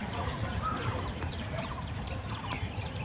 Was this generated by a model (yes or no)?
yes